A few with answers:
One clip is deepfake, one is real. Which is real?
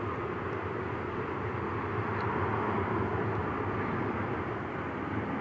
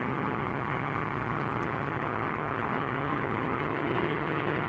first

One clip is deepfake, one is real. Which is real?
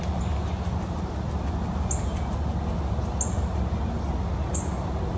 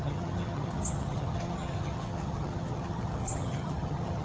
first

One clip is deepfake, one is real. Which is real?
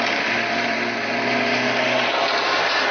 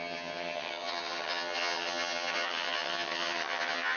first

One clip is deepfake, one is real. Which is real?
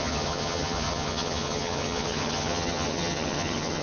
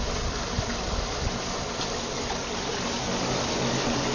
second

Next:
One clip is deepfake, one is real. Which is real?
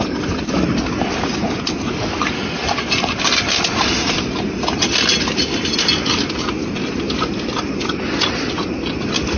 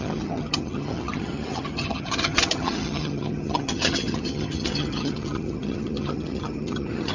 first